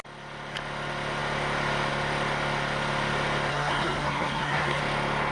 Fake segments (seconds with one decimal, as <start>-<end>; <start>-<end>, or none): 3.5-4.8